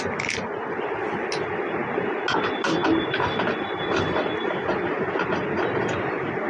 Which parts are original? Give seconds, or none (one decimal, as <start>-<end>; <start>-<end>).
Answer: 0.0-6.5